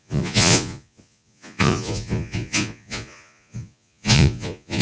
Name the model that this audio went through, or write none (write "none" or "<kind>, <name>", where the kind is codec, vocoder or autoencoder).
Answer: vocoder, Vocos